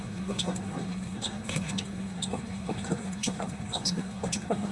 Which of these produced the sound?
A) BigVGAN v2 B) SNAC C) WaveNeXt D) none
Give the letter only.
B